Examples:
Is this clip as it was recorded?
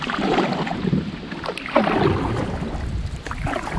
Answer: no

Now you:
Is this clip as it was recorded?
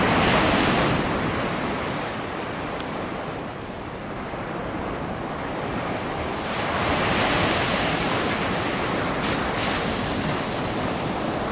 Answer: no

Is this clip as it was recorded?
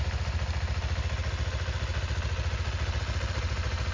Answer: yes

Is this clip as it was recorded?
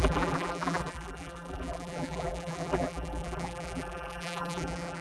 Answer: no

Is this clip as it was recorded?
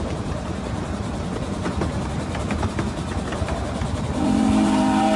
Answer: no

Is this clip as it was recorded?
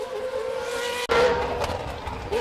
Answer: yes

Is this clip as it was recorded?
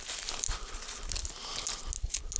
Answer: yes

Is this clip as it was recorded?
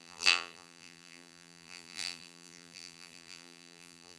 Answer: no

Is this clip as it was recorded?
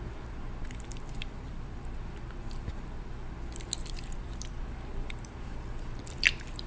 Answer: no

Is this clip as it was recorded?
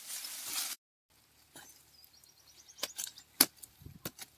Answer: yes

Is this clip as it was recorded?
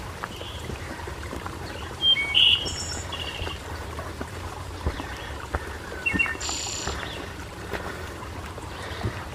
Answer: no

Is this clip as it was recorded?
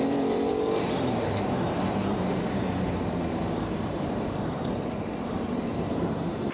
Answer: no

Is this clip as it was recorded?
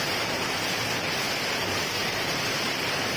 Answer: no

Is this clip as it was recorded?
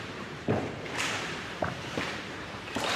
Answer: no